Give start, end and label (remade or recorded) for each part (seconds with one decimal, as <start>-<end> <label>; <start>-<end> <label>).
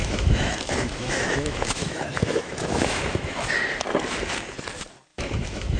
0.0-3.5 remade; 3.5-5.1 recorded; 5.1-5.8 remade